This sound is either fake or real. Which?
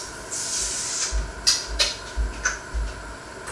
real